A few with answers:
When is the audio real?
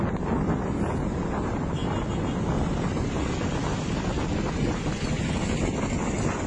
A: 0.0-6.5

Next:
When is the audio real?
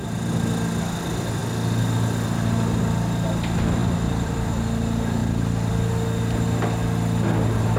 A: 0.0-3.8; 4.5-5.2; 5.7-7.8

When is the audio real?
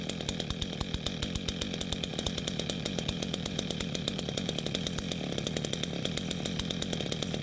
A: 0.0-2.1; 4.5-7.4